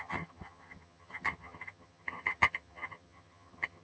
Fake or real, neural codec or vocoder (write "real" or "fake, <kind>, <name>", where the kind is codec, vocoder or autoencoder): fake, vocoder, HiFi-GAN